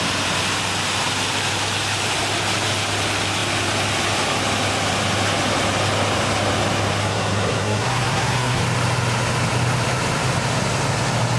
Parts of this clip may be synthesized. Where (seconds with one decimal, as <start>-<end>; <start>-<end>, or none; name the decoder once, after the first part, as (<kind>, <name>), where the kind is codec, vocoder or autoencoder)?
7.0-8.6 (codec, SNAC)